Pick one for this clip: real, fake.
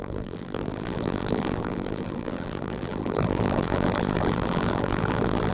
fake